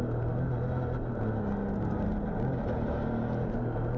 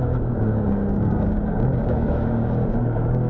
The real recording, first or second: first